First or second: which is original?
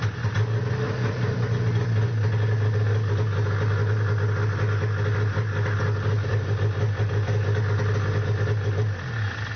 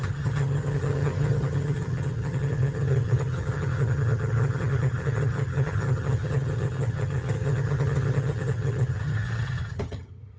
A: first